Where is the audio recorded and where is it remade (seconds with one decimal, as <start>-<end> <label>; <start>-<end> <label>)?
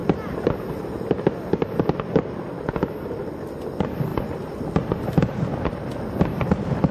0.0-6.9 recorded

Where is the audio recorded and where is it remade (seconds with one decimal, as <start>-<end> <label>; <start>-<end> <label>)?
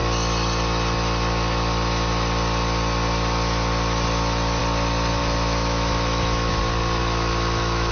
0.0-5.2 recorded; 5.2-6.6 remade; 6.6-7.0 recorded; 7.0-7.9 remade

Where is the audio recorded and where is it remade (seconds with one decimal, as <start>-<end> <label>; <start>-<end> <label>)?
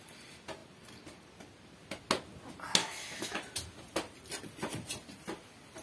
0.0-2.8 recorded; 2.8-3.4 remade; 3.4-5.8 recorded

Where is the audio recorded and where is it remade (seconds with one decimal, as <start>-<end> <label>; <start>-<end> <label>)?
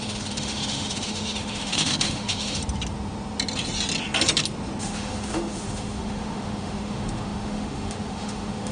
0.0-2.6 remade; 2.6-4.8 recorded; 4.8-8.7 remade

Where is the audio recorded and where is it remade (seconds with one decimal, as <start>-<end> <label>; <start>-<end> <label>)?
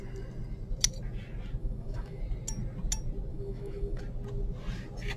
0.0-1.6 recorded; 1.6-2.2 remade; 2.2-3.3 recorded; 3.3-4.0 remade; 4.0-5.2 recorded